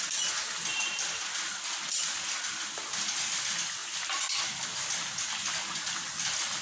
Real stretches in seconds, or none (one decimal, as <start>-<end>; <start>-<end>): 0.0-6.6